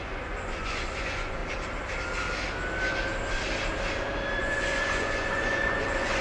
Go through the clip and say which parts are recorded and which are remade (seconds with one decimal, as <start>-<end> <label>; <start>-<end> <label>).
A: 0.0-1.4 remade; 1.4-4.4 recorded; 4.4-6.2 remade